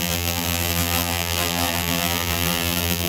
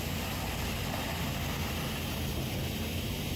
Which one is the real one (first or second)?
second